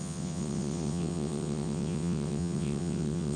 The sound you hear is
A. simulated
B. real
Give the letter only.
A